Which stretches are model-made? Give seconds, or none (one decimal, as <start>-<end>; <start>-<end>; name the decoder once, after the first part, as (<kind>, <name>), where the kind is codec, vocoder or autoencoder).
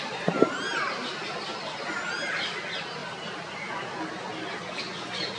none